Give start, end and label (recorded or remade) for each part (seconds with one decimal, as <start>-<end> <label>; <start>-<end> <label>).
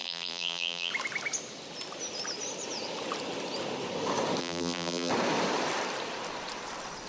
0.0-0.9 remade; 0.9-4.4 recorded; 4.4-5.1 remade; 5.1-7.1 recorded